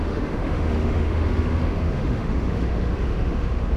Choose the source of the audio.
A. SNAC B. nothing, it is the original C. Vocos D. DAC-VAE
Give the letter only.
D